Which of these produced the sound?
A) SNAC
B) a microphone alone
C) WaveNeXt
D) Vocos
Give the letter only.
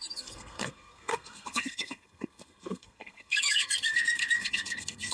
A